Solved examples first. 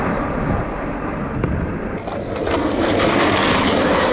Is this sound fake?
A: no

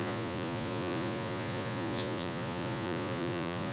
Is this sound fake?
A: yes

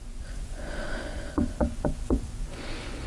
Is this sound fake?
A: yes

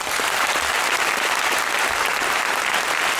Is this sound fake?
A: no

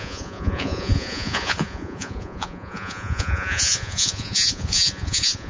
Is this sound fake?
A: yes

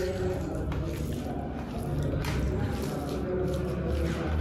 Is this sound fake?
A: no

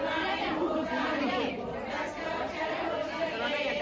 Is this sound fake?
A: no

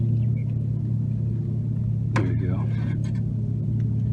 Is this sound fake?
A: no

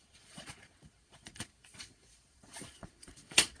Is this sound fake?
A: yes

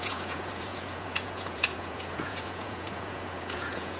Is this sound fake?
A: yes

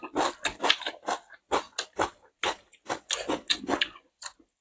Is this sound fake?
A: no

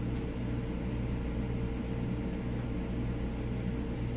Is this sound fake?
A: no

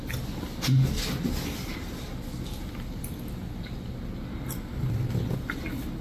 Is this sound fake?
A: no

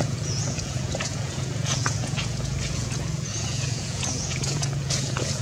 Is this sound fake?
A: yes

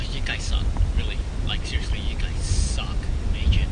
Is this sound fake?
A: no